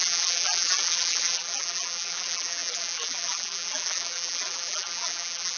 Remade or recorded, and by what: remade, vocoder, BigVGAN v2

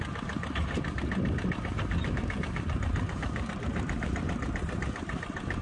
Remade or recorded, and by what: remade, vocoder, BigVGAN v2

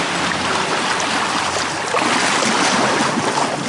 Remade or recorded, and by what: recorded